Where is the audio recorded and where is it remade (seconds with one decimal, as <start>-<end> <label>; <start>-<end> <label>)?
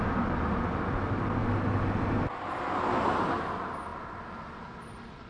0.0-5.3 recorded